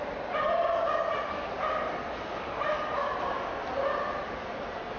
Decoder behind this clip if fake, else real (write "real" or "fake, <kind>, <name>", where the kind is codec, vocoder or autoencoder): real